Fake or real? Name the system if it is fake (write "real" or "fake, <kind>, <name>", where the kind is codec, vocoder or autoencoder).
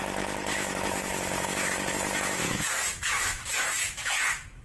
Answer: fake, autoencoder, DAC-VAE